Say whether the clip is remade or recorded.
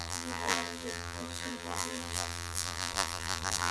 remade